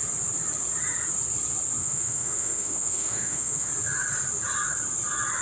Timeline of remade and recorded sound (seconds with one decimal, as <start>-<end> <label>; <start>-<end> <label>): 0.0-1.8 recorded; 1.8-3.7 remade; 3.7-5.4 recorded